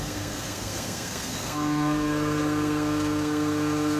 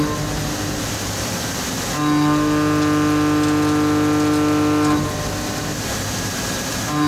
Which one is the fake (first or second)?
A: first